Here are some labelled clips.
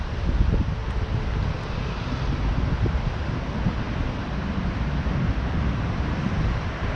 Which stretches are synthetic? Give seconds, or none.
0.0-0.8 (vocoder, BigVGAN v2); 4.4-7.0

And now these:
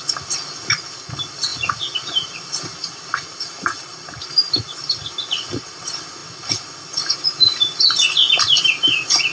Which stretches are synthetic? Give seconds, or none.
1.5-4.4 (vocoder, BigVGAN v2)

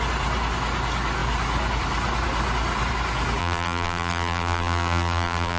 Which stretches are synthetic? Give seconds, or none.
3.4-5.6 (vocoder, BigVGAN v2)

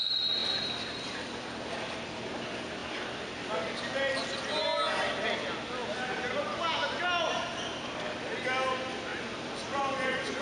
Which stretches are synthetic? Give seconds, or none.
0.4-2.2 (vocoder, BigVGAN v2); 9.1-10.4